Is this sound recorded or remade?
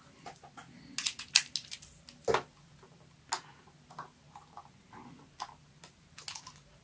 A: recorded